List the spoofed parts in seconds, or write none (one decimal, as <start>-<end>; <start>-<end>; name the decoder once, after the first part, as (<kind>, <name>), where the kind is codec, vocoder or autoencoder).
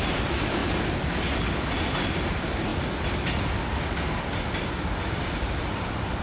0.0-0.6 (vocoder, BigVGAN v2); 2.3-2.7; 4.7-6.2